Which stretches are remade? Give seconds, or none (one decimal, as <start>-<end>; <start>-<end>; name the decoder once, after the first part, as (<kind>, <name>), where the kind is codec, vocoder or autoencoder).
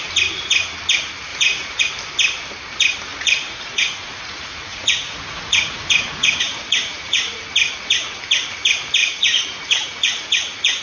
1.3-1.8 (vocoder, Vocos); 3.1-7.4; 9.0-10.8